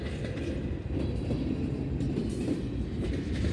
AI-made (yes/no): yes